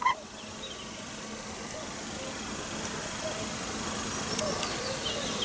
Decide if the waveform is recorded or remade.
recorded